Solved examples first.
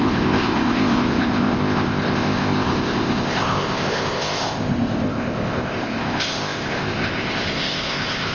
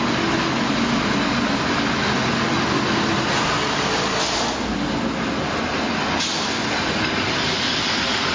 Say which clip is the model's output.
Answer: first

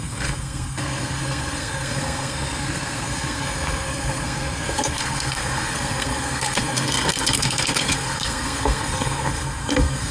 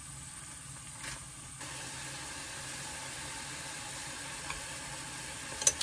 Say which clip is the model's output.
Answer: first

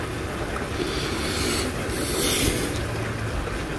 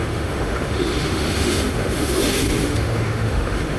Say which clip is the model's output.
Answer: second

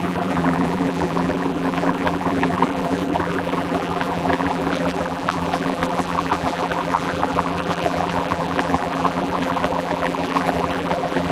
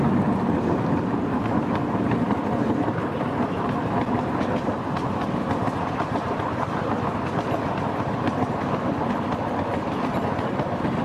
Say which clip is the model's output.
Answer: first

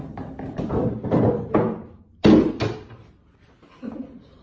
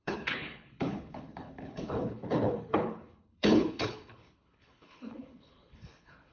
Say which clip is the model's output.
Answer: second